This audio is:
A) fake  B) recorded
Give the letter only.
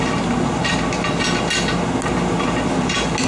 B